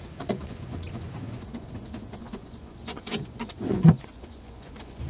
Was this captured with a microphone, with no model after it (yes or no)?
no